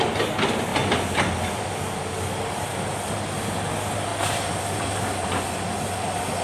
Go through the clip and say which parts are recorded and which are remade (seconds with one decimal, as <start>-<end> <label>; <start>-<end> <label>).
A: 0.0-6.4 recorded